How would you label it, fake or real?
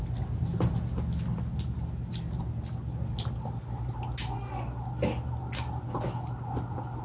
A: real